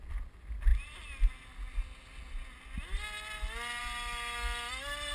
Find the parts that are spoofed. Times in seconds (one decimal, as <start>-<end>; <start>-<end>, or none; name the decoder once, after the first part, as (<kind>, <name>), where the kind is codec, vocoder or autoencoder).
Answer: none